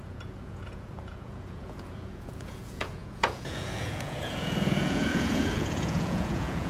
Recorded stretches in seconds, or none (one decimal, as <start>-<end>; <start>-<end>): none

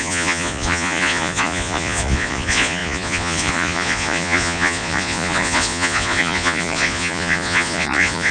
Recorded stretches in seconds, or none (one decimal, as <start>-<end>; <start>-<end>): none

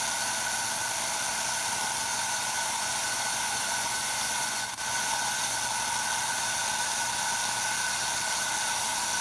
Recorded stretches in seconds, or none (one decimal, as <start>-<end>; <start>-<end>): 0.0-2.1; 5.6-9.2